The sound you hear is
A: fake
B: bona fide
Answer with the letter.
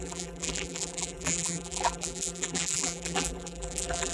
A